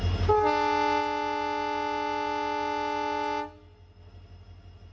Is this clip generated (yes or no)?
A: no